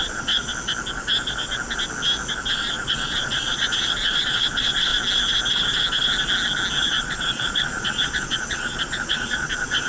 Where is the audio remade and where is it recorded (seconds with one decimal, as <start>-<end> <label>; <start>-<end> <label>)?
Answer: 0.0-0.5 remade; 0.5-2.6 recorded; 2.6-4.9 remade; 4.9-6.8 recorded; 6.8-9.9 remade